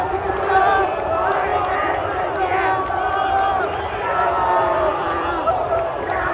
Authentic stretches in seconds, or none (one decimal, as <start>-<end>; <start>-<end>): 1.5-3.1